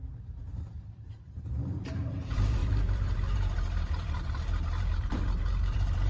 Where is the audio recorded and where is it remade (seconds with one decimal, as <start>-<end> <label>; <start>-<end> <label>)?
0.0-6.1 remade